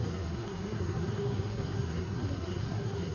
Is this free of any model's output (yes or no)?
no